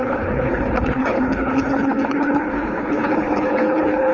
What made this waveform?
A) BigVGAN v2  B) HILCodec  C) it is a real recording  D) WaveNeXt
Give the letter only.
B